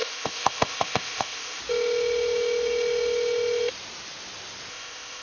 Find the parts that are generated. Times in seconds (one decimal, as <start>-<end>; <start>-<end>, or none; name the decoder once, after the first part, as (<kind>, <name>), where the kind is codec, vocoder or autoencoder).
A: 0.0-1.6 (codec, ZipCodec); 4.7-5.2